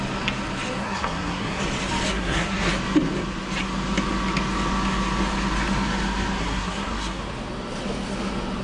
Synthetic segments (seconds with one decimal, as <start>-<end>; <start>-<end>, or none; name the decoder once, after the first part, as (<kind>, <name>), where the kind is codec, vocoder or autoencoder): 0.8-1.6 (codec, SNAC); 2.1-2.7; 6.4-7.2